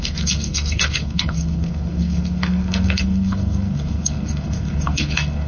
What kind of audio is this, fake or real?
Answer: fake